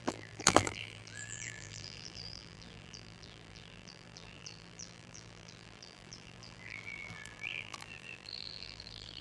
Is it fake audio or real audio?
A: fake